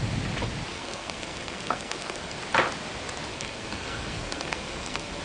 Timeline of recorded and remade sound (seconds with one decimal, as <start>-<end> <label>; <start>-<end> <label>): 0.0-0.7 recorded; 0.7-2.4 remade; 2.4-3.3 recorded; 3.3-5.2 remade